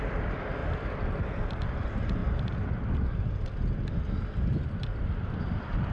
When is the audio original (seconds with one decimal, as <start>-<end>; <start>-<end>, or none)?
0.6-1.7; 2.2-5.0